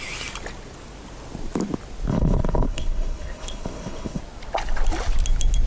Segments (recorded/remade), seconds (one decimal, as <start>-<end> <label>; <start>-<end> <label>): 0.0-2.1 recorded; 2.1-4.2 remade; 4.2-5.7 recorded